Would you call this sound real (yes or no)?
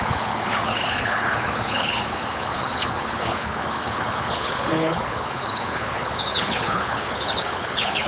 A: no